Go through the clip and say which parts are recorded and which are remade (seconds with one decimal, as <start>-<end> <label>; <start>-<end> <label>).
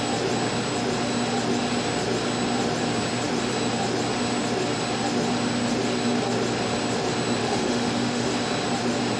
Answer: 0.0-7.4 recorded; 7.4-8.3 remade; 8.3-9.2 recorded